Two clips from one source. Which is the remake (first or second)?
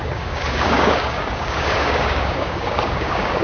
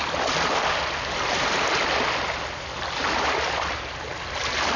first